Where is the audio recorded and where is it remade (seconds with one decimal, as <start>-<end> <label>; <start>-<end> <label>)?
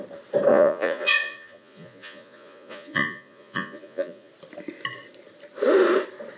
0.0-0.5 recorded; 0.5-4.3 remade; 4.3-6.4 recorded